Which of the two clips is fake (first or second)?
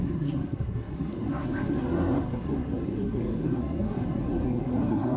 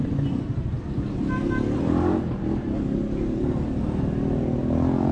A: first